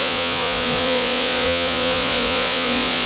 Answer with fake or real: fake